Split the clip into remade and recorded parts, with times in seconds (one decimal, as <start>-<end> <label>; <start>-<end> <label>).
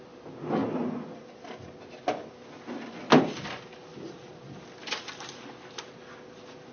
0.0-6.7 recorded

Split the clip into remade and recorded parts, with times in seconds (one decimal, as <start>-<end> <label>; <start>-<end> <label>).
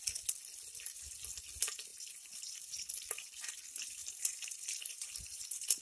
0.0-1.9 recorded; 1.9-2.7 remade; 2.7-4.0 recorded; 4.0-5.8 remade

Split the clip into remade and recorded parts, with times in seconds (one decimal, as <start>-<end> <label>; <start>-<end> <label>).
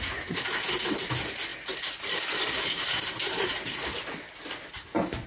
0.0-5.3 recorded